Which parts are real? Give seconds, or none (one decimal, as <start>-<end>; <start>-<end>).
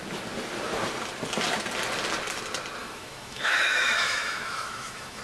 0.0-2.8